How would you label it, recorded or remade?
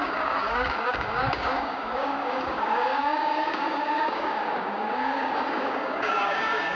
remade